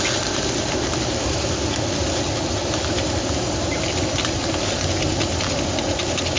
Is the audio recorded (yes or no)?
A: yes